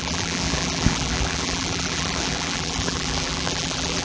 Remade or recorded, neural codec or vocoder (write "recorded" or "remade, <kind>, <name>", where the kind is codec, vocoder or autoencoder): remade, vocoder, BigVGAN v2